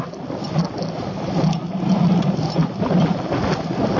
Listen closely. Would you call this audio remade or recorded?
recorded